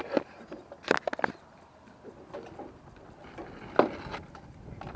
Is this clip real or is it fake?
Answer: real